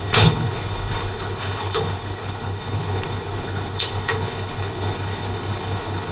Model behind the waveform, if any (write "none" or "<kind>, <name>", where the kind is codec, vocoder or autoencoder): codec, HILCodec